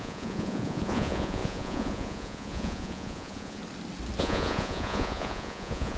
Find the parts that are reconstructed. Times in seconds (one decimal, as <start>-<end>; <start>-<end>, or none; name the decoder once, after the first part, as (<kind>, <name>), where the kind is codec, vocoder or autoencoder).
0.0-3.6 (vocoder, Vocos); 4.2-6.0